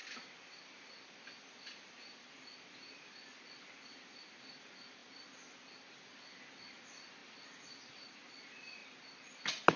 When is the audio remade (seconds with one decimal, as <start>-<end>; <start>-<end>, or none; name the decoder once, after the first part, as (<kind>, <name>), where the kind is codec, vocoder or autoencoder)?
5.0-5.7 (vocoder, BigVGAN v2); 7.2-7.8; 8.8-9.4